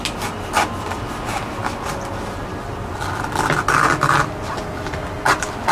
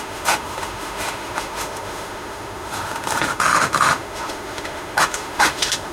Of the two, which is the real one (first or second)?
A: first